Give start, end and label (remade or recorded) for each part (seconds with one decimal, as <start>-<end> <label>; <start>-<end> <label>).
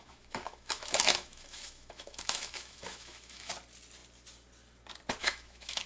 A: 0.0-3.5 remade; 3.5-5.2 recorded; 5.2-5.9 remade